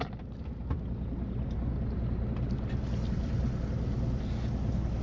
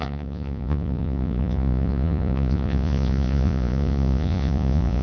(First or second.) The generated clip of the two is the second